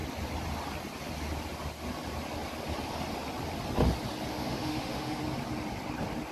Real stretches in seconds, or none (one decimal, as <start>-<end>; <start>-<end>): 0.0-4.3; 5.2-6.3